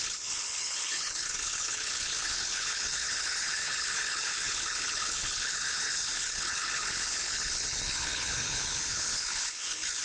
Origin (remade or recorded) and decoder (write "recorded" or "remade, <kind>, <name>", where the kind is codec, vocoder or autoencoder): remade, codec, HILCodec